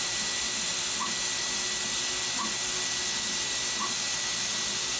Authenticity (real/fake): real